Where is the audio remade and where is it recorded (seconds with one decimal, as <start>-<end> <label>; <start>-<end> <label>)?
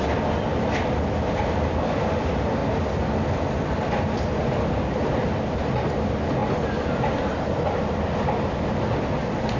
0.0-9.6 recorded